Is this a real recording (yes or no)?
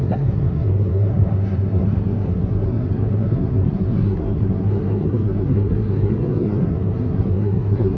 no